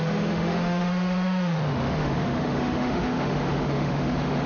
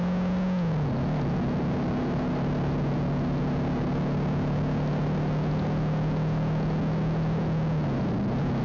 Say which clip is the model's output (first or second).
first